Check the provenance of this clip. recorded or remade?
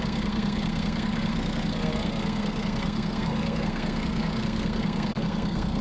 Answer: remade